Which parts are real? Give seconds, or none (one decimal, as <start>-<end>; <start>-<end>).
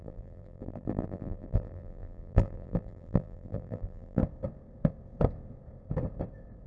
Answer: 4.2-6.7